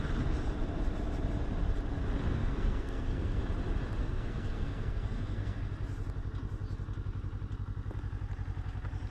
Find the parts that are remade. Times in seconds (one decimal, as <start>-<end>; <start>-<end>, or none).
2.4-3.4; 4.0-5.6